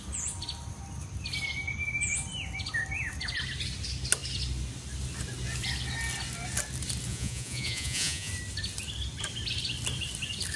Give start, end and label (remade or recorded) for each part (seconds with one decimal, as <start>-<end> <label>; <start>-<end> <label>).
0.0-7.1 recorded; 7.1-8.3 remade; 8.3-10.6 recorded